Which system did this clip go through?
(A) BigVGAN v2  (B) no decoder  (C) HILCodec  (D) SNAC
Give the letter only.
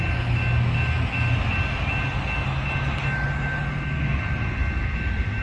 B